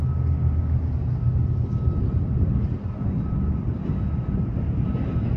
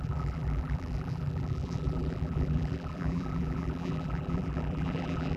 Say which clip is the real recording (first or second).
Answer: first